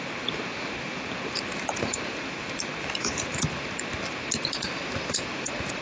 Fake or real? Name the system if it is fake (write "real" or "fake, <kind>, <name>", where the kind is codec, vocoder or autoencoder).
fake, vocoder, BigVGAN v2